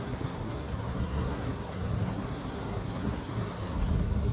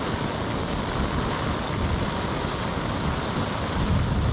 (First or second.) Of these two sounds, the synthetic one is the first